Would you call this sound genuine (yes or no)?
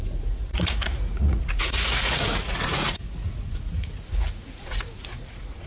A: no